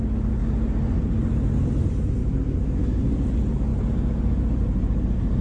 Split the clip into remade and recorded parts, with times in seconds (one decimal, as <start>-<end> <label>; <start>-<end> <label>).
0.0-2.2 recorded; 2.2-3.0 remade; 3.0-5.4 recorded